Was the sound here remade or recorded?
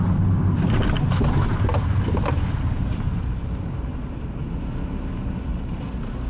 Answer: recorded